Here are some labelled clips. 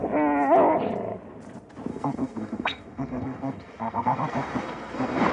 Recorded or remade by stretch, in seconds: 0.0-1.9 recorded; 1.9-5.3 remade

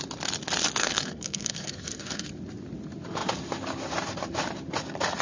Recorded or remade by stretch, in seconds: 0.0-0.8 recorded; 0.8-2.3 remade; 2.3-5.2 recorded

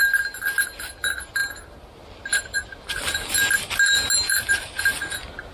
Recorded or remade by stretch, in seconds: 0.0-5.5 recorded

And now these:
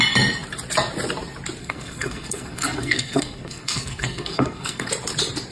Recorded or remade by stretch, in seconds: 0.0-1.6 recorded; 1.6-4.9 remade; 4.9-5.5 recorded

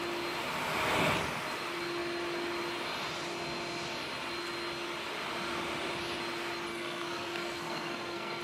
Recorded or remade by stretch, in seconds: 0.0-6.7 recorded; 6.7-8.4 remade